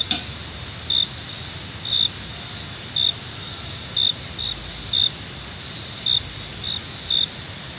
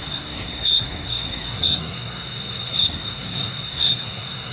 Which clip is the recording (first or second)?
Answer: first